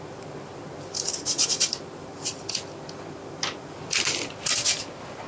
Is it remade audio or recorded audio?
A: recorded